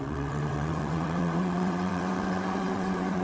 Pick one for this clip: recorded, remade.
remade